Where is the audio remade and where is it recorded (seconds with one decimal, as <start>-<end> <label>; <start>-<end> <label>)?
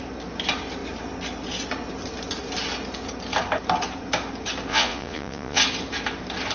0.0-4.7 recorded; 4.7-5.6 remade; 5.6-6.5 recorded